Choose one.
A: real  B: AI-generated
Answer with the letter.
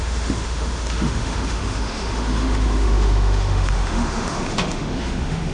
B